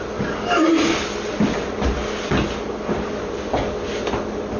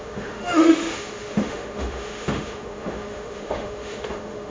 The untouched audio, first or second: first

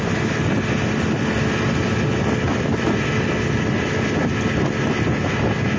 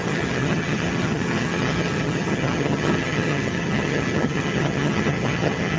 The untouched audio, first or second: first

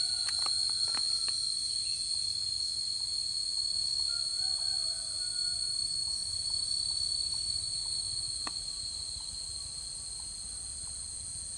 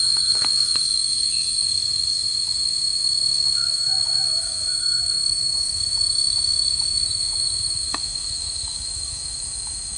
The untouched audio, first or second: first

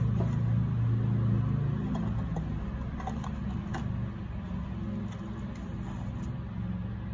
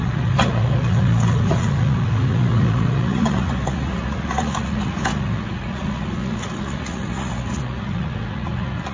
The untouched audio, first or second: first